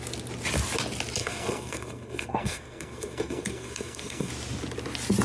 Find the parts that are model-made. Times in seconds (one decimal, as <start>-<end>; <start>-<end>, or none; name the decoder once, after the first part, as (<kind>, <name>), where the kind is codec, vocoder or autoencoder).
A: 1.2-4.3 (codec, SNAC)